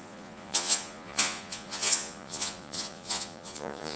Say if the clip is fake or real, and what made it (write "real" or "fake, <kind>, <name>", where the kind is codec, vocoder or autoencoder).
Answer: fake, vocoder, Vocos